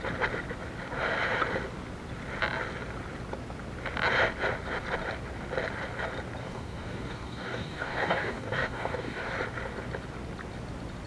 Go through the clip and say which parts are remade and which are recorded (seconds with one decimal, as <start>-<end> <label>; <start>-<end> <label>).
0.0-6.4 recorded; 6.4-9.3 remade; 9.3-11.1 recorded